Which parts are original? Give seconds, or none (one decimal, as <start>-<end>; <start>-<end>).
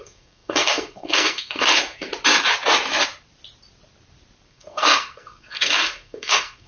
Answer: 2.1-4.5